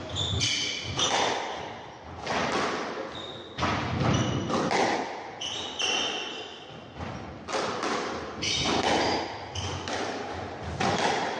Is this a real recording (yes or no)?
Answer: yes